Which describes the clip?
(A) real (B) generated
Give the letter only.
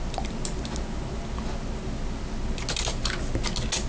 A